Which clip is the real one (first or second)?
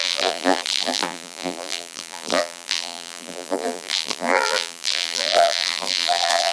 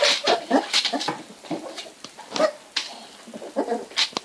second